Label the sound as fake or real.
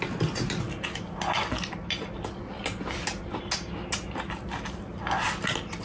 real